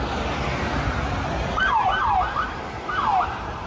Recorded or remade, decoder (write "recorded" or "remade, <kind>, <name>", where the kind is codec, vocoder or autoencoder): recorded